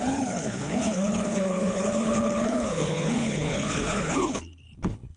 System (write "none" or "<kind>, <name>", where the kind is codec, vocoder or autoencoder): codec, HILCodec